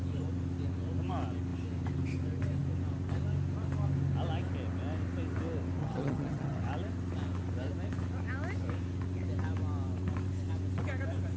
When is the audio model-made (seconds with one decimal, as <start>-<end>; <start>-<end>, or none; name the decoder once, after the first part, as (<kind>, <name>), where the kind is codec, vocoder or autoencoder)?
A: 5.8-6.6 (vocoder, HiFi-GAN)